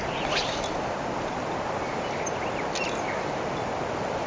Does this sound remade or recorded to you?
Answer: recorded